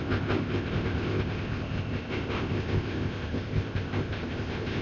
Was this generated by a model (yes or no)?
yes